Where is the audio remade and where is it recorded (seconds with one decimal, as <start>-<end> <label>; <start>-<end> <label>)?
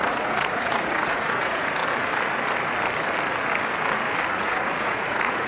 0.0-1.8 remade; 1.8-4.4 recorded; 4.4-5.5 remade